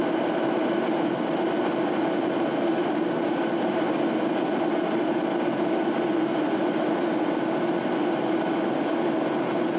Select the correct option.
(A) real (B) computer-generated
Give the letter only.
A